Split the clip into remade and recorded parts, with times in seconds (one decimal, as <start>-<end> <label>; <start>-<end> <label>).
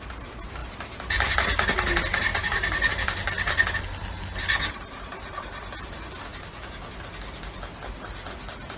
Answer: 0.0-2.3 recorded; 2.3-2.9 remade; 2.9-6.3 recorded; 6.3-6.9 remade; 6.9-8.8 recorded